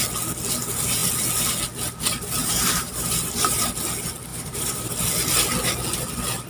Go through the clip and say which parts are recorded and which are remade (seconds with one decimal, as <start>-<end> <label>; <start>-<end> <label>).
0.0-2.4 recorded; 2.4-3.6 remade; 3.6-4.3 recorded; 4.3-4.9 remade; 4.9-6.5 recorded

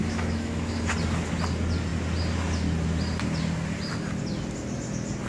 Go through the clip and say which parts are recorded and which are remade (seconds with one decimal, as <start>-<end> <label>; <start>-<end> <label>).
0.0-0.8 remade; 0.8-5.3 recorded

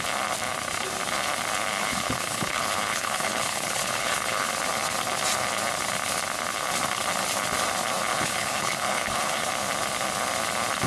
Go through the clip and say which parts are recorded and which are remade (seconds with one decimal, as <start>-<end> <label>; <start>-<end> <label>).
0.0-1.8 recorded; 1.8-4.5 remade; 4.5-8.1 recorded; 8.1-9.5 remade; 9.5-10.9 recorded

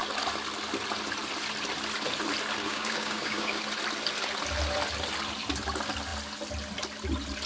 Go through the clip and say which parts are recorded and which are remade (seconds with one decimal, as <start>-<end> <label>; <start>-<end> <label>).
0.0-2.6 recorded; 2.6-3.6 remade; 3.6-7.5 recorded

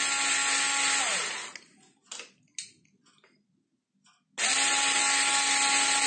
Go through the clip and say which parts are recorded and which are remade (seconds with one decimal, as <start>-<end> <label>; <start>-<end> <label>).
0.0-6.1 recorded